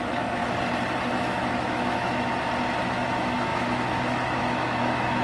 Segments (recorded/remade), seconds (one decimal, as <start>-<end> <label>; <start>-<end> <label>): 0.0-0.4 remade; 0.4-1.2 recorded; 1.2-2.3 remade; 2.3-2.8 recorded; 2.8-5.2 remade